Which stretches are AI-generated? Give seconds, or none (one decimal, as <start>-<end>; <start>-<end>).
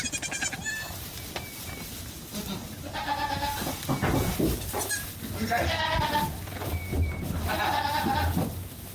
6.9-7.5